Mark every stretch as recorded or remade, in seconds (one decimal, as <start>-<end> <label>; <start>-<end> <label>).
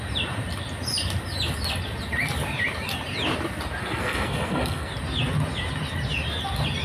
0.0-3.8 recorded; 3.8-4.9 remade; 4.9-6.8 recorded